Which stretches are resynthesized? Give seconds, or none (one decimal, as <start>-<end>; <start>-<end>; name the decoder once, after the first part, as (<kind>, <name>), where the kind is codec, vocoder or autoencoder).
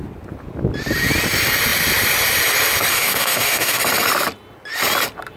2.9-3.8 (codec, DAC)